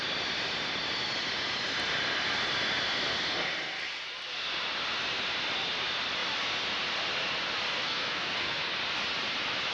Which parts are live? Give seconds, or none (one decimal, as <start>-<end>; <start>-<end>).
0.0-7.7; 8.6-9.7